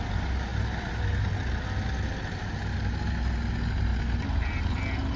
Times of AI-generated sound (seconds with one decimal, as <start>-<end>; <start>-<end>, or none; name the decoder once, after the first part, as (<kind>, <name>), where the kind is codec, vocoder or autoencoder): none